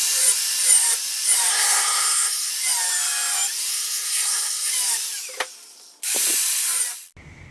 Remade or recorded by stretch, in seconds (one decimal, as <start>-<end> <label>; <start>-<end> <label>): 0.0-1.5 recorded; 1.5-2.5 remade; 2.5-3.7 recorded; 3.7-4.7 remade; 4.7-7.5 recorded